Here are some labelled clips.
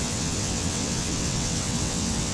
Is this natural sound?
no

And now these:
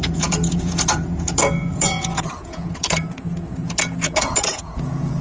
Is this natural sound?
no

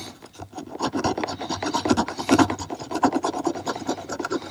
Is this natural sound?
yes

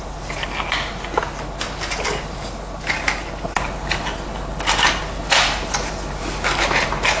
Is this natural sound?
yes